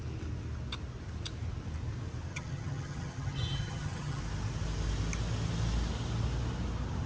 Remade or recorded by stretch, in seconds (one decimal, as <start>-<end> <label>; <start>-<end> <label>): 0.0-2.3 recorded; 2.3-4.2 remade; 4.2-7.1 recorded